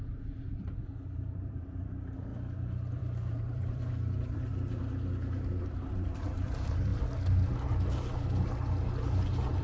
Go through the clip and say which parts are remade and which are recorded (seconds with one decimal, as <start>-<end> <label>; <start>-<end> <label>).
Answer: 0.0-2.3 remade; 2.3-3.0 recorded; 3.0-6.9 remade; 6.9-9.6 recorded